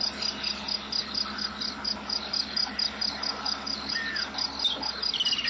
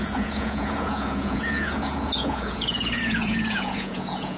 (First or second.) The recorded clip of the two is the first